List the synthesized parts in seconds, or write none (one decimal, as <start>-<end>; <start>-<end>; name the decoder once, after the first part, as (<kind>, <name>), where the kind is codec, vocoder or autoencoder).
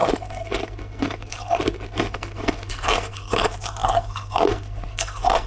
0.0-5.5 (codec, SNAC)